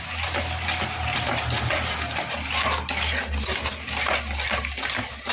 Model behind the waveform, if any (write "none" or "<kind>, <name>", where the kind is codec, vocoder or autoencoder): none